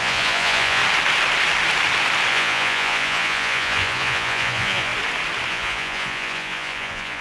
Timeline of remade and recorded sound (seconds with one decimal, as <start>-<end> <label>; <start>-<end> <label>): 0.0-0.8 remade; 0.8-2.3 recorded; 2.3-4.9 remade; 4.9-5.5 recorded; 5.5-7.2 remade